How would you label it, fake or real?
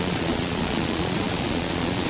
fake